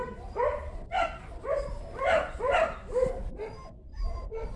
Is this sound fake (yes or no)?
no